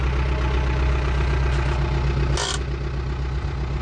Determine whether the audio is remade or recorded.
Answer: recorded